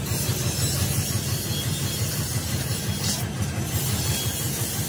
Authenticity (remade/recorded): recorded